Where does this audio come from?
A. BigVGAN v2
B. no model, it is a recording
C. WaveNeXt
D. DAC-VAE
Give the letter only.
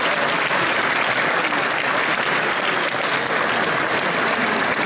B